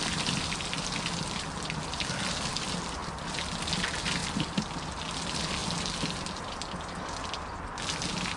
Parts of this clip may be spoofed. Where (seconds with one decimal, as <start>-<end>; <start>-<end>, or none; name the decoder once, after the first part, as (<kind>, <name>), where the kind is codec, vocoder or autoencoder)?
none